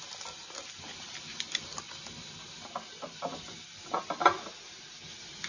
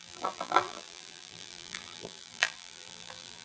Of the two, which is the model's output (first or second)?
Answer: second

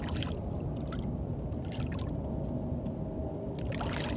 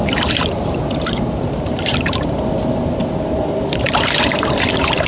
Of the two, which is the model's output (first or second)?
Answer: second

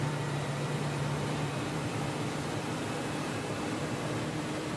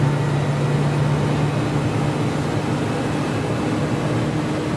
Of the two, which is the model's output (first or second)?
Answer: first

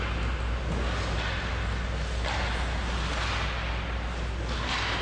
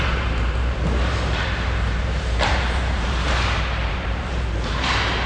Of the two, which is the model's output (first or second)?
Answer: second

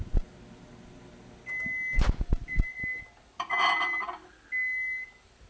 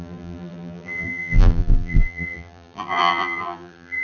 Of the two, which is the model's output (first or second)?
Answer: second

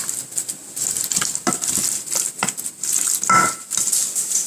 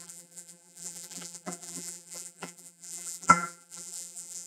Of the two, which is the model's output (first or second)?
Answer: second